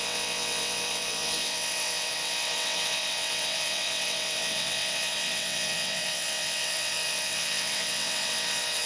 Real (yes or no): no